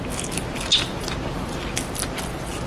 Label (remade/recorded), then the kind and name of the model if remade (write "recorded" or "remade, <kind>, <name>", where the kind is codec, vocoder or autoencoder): recorded